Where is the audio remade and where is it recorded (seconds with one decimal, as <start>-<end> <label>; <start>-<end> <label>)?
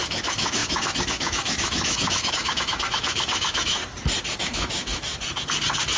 0.0-3.8 remade; 3.8-4.4 recorded; 4.4-5.1 remade; 5.1-6.0 recorded